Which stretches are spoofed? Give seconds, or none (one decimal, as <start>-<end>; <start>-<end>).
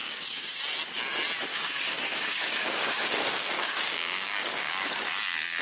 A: 0.0-0.6; 1.5-4.7